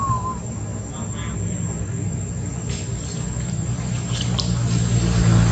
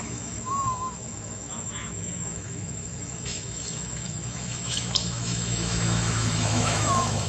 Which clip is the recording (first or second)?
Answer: first